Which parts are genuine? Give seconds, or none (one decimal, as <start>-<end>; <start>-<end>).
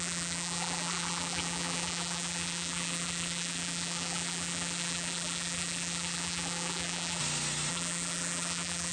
7.2-7.7